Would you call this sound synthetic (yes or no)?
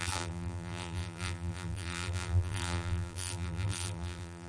yes